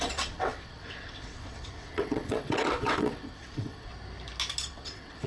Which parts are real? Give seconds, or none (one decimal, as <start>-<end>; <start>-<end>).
3.9-4.6

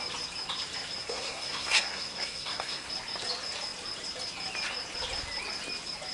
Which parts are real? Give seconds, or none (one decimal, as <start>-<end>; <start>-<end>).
0.0-1.0; 2.9-6.1